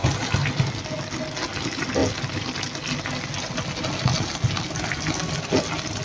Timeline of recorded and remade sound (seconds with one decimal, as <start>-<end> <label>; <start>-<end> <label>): 0.0-6.0 recorded